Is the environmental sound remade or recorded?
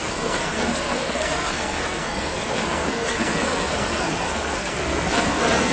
remade